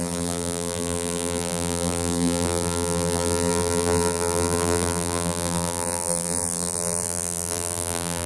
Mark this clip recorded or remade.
remade